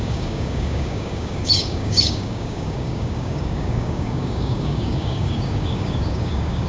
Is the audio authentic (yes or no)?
no